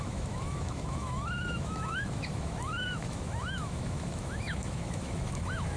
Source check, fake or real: fake